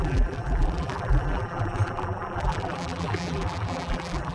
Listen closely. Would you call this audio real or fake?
fake